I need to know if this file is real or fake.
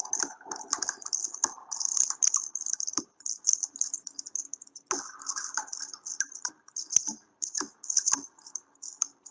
real